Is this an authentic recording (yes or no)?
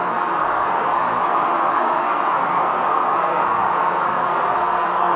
no